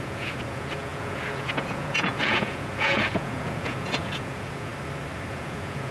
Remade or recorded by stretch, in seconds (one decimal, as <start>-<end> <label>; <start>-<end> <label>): 0.0-4.7 remade; 4.7-5.3 recorded; 5.3-5.9 remade